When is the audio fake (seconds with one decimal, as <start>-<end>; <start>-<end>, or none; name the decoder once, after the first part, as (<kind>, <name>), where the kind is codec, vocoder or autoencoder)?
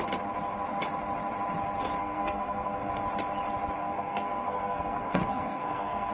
2.0-2.9 (codec, SNAC); 3.8-6.1